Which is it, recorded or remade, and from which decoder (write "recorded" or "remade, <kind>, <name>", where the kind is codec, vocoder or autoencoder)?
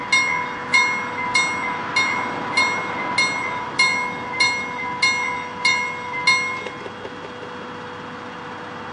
recorded